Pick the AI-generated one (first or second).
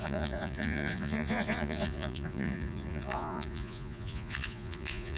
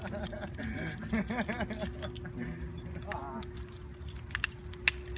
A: first